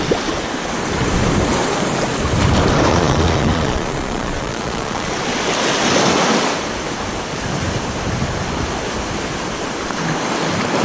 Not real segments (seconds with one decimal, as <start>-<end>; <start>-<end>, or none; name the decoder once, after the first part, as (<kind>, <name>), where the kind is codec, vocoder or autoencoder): 2.9-5.1 (vocoder, Vocos)